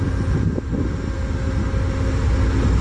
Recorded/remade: recorded